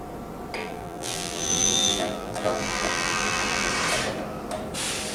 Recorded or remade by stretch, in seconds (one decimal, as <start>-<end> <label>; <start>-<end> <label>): 0.0-0.6 recorded; 0.6-3.7 remade; 3.7-5.1 recorded